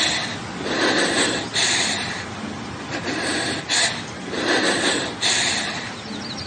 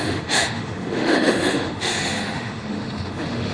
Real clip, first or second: first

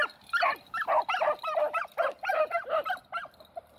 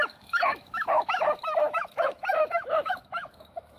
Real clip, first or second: first